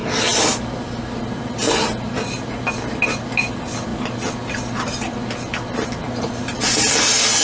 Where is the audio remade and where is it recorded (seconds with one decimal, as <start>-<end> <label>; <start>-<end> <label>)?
0.0-7.4 recorded